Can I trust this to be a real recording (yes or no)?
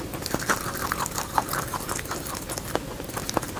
yes